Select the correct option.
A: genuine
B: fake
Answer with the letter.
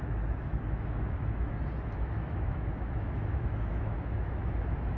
B